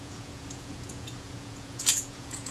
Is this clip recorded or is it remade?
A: remade